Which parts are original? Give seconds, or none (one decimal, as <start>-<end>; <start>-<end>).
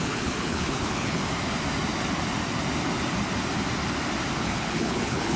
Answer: 1.2-4.4